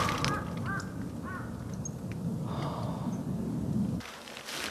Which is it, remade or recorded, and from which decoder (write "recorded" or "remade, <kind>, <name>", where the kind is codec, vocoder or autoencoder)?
recorded